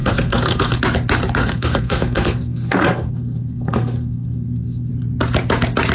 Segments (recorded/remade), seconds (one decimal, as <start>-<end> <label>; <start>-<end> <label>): 0.0-0.8 remade; 0.8-1.4 recorded; 1.4-4.9 remade; 4.9-5.9 recorded